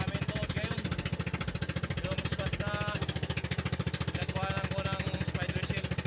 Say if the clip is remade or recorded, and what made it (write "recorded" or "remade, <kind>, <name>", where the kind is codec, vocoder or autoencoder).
recorded